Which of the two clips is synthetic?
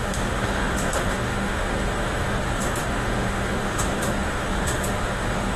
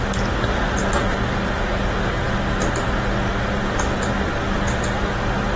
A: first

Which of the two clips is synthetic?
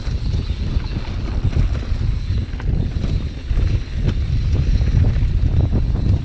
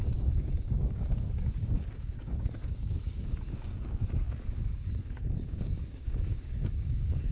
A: second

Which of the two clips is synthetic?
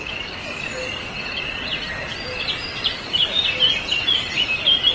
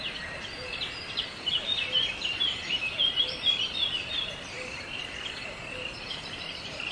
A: second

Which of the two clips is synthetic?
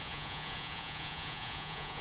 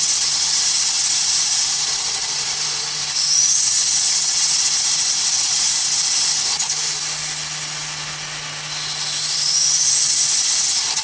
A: first